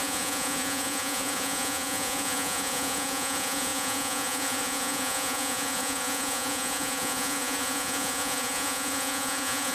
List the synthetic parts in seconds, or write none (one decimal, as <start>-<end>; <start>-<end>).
0.0-9.7